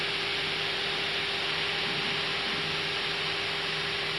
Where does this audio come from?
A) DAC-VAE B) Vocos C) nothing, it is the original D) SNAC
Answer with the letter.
C